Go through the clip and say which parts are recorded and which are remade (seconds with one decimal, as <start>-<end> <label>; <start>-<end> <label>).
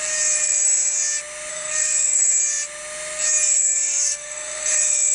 0.0-1.5 recorded; 1.5-2.4 remade; 2.4-3.5 recorded; 3.5-5.1 remade